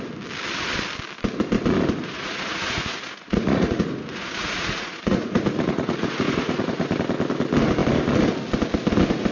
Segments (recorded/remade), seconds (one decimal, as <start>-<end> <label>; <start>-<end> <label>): 0.0-2.0 recorded; 2.0-6.9 remade; 6.9-9.3 recorded